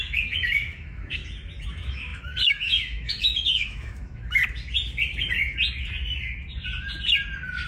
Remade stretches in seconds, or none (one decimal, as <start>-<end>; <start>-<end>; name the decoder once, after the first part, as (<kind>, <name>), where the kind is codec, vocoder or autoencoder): 0.0-1.2 (autoencoder, DAC-VAE); 1.7-4.4